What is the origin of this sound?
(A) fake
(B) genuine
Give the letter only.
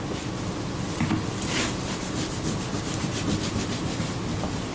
B